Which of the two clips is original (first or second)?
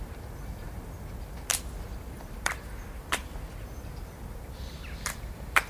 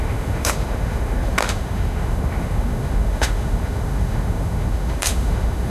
first